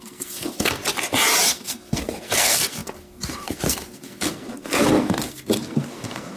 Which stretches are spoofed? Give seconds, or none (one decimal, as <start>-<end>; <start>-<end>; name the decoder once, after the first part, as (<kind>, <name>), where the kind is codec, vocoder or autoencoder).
0.0-0.8 (codec, SNAC); 1.5-6.4